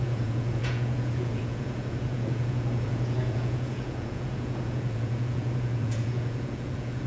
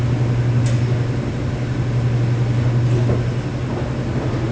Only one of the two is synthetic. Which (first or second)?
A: first